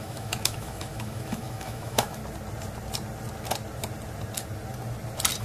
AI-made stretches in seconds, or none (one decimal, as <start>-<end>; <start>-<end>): 0.0-2.2